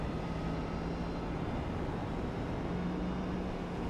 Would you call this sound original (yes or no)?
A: yes